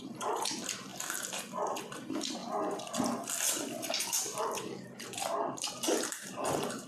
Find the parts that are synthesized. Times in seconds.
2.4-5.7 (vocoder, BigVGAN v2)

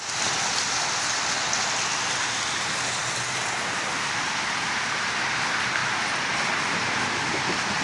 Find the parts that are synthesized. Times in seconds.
none

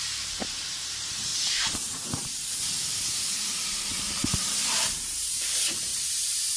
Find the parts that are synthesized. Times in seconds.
0.0-6.6 (vocoder, BigVGAN v2)

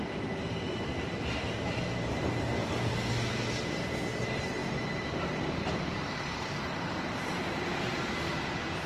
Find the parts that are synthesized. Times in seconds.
2.6-3.1 (vocoder, BigVGAN v2); 4.6-8.5